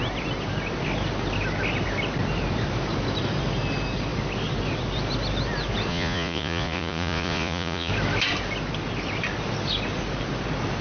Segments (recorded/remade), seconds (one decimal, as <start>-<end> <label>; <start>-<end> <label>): 0.0-5.9 recorded; 5.9-7.9 remade; 7.9-10.8 recorded